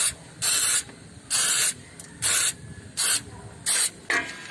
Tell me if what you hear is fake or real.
real